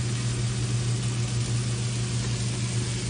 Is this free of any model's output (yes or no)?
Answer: yes